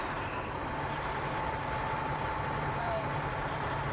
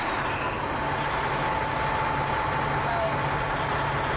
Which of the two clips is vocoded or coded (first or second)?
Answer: first